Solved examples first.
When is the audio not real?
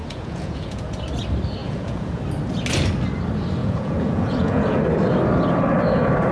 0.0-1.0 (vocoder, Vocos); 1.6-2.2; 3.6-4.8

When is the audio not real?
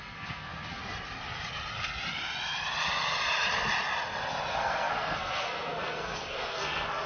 0.0-0.8 (codec, SNAC); 4.5-7.1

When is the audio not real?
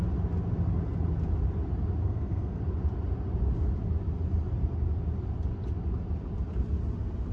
2.0-2.6 (codec, SNAC)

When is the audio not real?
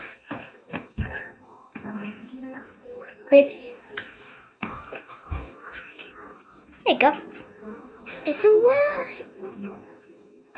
0.0-6.8 (codec, DAC); 7.4-10.6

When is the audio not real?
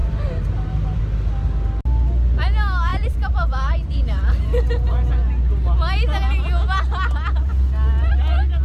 0.0-1.0 (vocoder, BigVGAN v2); 2.9-4.3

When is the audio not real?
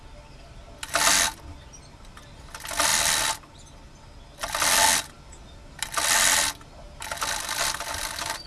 none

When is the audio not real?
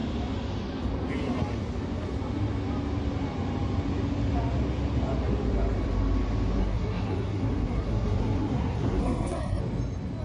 6.6-9.6 (codec, SNAC)